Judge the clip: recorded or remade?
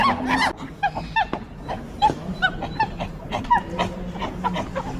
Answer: recorded